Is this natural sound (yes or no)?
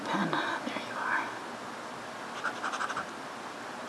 yes